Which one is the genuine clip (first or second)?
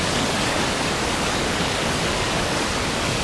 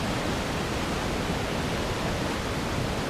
second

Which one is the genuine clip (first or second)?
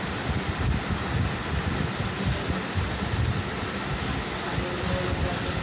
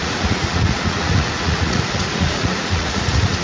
first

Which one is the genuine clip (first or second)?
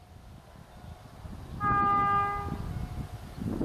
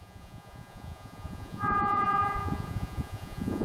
first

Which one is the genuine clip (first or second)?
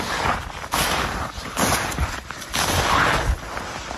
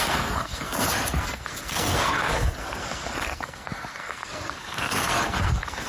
first